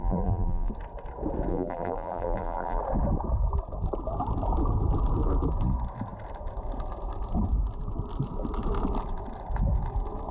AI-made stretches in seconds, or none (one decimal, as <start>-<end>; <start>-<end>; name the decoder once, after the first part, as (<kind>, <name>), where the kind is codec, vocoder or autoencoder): 0.0-0.7 (vocoder, BigVGAN v2); 1.5-2.8